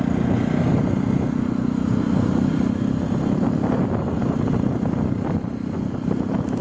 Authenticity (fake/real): real